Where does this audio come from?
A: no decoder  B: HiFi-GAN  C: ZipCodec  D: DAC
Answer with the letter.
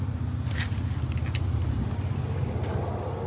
A